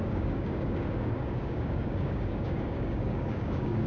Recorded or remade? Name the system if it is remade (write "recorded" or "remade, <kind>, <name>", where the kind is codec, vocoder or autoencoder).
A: remade, codec, DAC